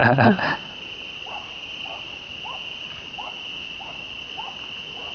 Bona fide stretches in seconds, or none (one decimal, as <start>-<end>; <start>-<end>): 0.0-5.1